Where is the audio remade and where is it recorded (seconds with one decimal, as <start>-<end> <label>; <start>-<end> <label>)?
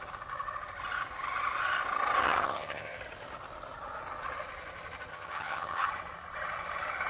0.0-2.2 recorded; 2.2-3.0 remade; 3.0-5.1 recorded; 5.1-5.9 remade; 5.9-7.1 recorded